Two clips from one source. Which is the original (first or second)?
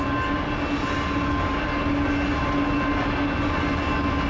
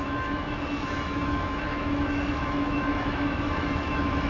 first